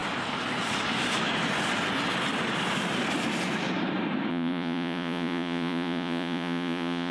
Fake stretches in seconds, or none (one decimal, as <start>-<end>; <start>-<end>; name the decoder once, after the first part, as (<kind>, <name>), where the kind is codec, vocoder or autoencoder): 4.3-7.1 (vocoder, Vocos)